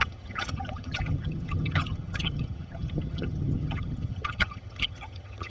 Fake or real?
fake